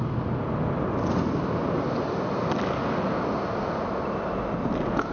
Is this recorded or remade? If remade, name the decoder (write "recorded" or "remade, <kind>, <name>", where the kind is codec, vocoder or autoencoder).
recorded